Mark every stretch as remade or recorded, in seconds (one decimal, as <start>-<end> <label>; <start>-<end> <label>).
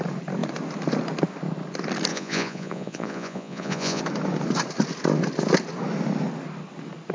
0.0-2.1 recorded; 2.1-4.0 remade; 4.0-7.1 recorded